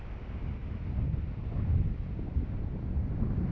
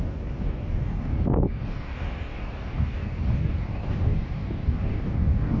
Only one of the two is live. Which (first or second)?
first